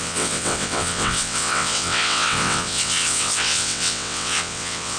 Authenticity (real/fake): fake